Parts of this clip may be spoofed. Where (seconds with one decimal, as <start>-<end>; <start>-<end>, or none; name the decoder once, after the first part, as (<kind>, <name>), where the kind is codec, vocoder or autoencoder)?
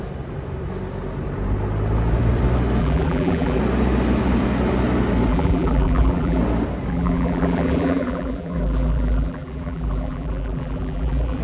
2.8-3.6 (vocoder, BigVGAN v2); 5.3-6.4; 6.9-11.4